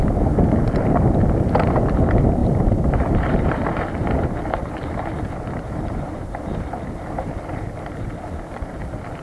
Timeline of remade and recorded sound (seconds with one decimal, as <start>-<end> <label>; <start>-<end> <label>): 0.0-2.4 recorded; 2.4-6.4 remade; 6.4-9.2 recorded